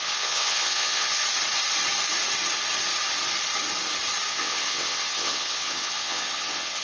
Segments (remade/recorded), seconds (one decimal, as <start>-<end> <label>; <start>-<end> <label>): 0.0-1.2 remade; 1.2-4.3 recorded; 4.3-6.8 remade